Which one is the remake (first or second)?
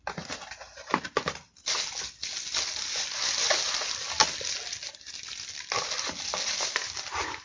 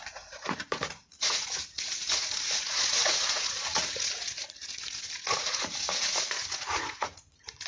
second